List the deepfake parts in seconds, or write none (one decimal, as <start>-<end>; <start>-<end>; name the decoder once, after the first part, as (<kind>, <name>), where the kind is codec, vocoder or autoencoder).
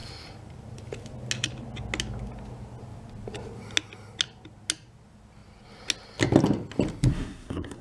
7.1-7.8 (codec, SNAC)